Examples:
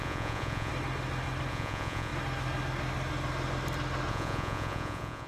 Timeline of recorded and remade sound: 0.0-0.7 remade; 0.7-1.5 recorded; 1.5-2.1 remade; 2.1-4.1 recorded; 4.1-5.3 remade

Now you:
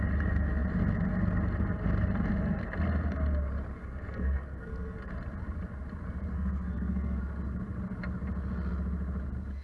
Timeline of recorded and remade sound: 0.0-3.8 recorded; 3.8-5.1 remade; 5.1-6.3 recorded; 6.3-7.2 remade; 7.2-9.6 recorded

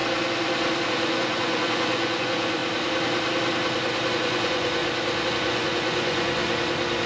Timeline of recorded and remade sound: 0.0-0.9 recorded; 0.9-2.6 remade; 2.6-4.1 recorded; 4.1-4.8 remade; 4.8-5.3 recorded; 5.3-6.4 remade; 6.4-7.1 recorded

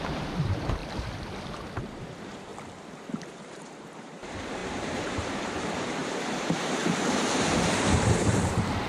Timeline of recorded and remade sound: 0.0-0.8 remade; 0.8-1.8 recorded; 1.8-2.5 remade; 2.5-3.4 recorded; 3.4-8.9 remade

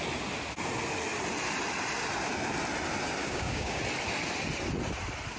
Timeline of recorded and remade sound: 0.0-3.2 recorded; 3.2-3.8 remade; 3.8-5.4 recorded

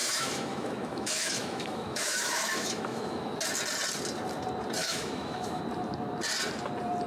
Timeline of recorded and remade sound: 0.0-3.3 remade; 3.3-4.8 recorded; 4.8-5.6 remade; 5.6-7.1 recorded

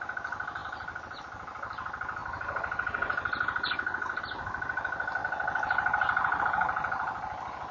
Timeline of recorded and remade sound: 0.0-2.2 recorded; 2.2-4.2 remade; 4.2-5.2 recorded; 5.2-6.4 remade; 6.4-7.7 recorded

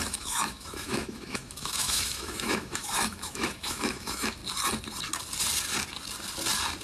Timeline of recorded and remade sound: 0.0-4.4 remade; 4.4-6.8 recorded